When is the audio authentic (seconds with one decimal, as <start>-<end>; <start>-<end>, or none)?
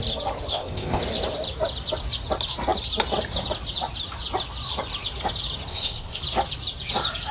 0.0-0.5; 1.0-5.7; 6.2-7.3